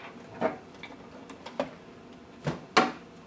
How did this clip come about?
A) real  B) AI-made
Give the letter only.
A